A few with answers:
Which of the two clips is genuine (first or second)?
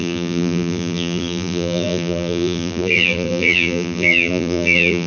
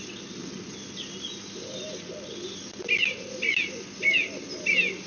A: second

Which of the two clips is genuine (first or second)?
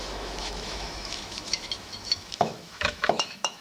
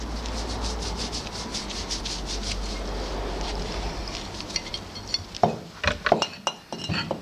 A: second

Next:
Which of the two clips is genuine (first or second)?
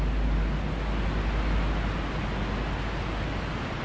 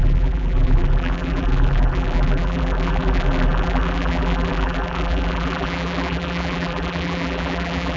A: first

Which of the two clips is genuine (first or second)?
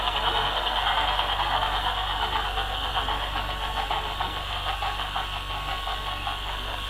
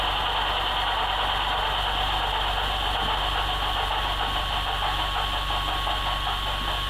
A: second